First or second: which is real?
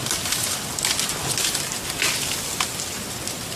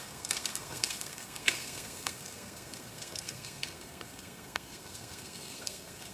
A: first